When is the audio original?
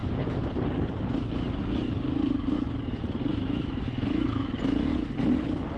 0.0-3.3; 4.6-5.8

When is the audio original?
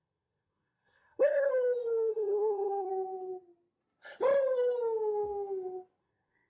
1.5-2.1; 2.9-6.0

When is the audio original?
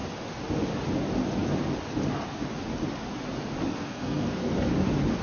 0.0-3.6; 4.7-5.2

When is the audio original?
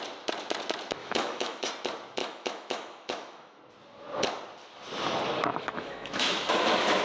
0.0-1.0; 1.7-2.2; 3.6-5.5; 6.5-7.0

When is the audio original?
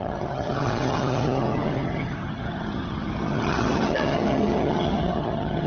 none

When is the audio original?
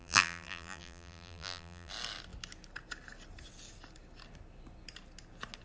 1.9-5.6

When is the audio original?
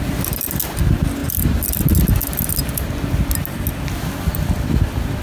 0.0-5.2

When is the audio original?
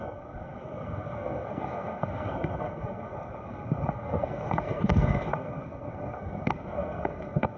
none